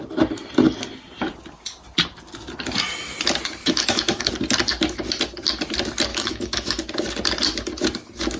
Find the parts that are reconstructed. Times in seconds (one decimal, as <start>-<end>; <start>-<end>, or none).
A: 3.6-4.3; 6.1-6.8